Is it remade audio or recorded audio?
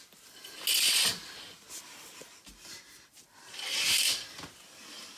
recorded